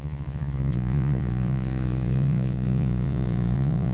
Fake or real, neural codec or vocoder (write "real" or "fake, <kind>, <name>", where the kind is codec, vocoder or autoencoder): fake, vocoder, Vocos